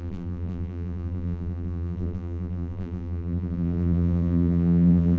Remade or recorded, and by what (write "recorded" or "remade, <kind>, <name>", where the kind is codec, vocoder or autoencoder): remade, vocoder, BigVGAN v2